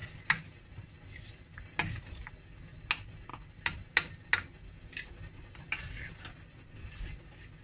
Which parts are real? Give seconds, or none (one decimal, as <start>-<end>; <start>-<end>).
0.0-7.6